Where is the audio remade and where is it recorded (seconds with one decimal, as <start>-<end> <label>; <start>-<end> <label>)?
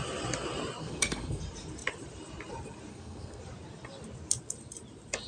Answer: 0.0-0.8 recorded; 0.8-1.4 remade; 1.4-2.9 recorded; 2.9-3.4 remade; 3.4-5.3 recorded